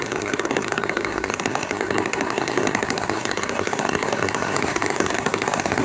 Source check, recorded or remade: remade